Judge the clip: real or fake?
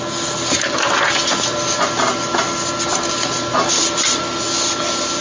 real